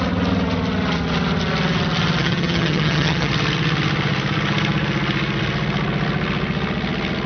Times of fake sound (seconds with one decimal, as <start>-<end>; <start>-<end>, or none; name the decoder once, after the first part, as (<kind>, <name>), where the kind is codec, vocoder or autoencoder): 2.2-3.3 (vocoder, HiFi-GAN)